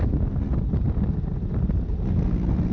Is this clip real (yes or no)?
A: yes